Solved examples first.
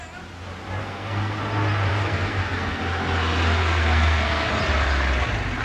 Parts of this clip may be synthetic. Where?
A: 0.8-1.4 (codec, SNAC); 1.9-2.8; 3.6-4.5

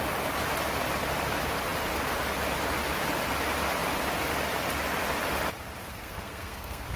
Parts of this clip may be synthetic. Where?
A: 5.8-7.0 (codec, SNAC)

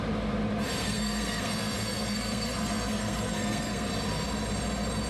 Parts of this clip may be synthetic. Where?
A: 0.8-3.9 (codec, SNAC)

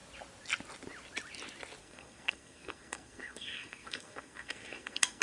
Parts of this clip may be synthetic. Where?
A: 1.8-5.2 (codec, SNAC)

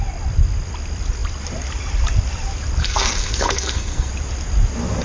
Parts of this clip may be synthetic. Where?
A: 2.8-4.1 (codec, SNAC)

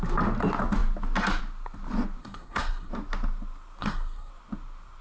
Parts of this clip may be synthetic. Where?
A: 2.2-2.9 (codec, SNAC); 3.8-4.3